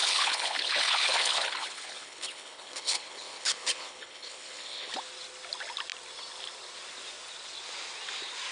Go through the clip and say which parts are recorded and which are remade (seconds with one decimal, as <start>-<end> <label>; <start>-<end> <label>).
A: 0.0-4.9 remade; 4.9-8.5 recorded